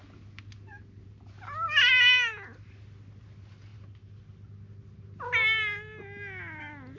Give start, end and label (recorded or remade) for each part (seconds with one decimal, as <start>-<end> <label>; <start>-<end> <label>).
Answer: 0.0-7.0 recorded